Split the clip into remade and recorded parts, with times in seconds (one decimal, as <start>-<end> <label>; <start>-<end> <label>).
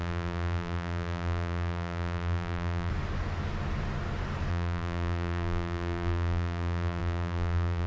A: 0.0-2.9 remade; 2.9-4.5 recorded; 4.5-7.9 remade